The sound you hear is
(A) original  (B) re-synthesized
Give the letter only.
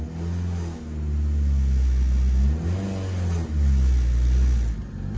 A